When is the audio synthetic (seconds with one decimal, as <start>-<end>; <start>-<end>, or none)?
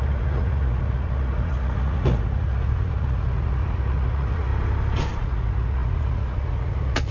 0.0-4.5; 5.2-7.1